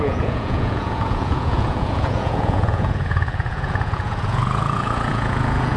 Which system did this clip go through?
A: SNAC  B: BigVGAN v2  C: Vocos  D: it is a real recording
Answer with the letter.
C